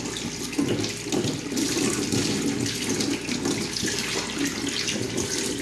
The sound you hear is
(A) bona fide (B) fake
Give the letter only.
A